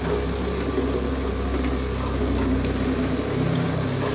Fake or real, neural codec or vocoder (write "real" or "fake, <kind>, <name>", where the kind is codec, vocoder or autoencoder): real